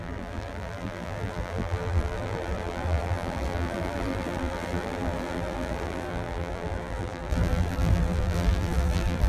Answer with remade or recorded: remade